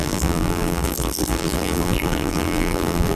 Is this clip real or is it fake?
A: fake